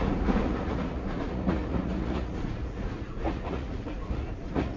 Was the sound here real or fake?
fake